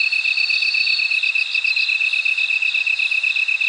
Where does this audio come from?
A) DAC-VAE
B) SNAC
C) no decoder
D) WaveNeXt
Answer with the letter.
C